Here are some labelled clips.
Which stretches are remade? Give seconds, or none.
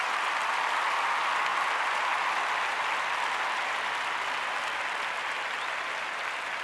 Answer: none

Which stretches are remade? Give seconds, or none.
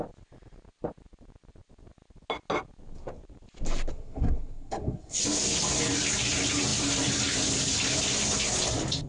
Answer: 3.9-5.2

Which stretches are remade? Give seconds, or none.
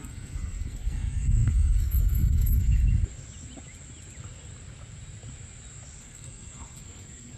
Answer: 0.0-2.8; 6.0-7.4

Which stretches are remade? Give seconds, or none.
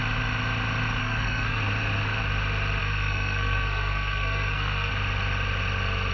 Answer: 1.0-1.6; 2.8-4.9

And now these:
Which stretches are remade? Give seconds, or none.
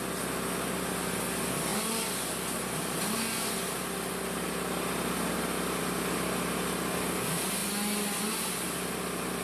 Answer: none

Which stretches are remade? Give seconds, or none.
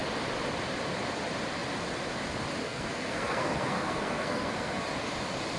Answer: 2.6-4.9